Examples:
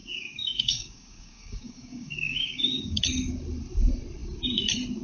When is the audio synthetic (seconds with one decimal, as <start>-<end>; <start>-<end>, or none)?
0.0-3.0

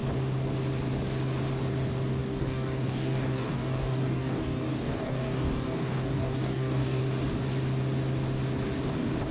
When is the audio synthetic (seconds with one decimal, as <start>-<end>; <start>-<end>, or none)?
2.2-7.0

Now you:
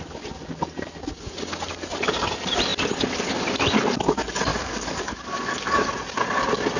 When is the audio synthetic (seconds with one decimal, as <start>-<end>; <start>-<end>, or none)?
4.5-5.9